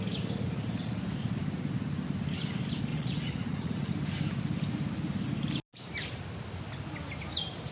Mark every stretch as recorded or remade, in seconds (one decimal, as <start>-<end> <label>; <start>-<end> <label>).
0.0-2.9 recorded; 2.9-3.9 remade; 3.9-7.7 recorded